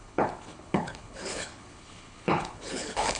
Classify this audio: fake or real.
fake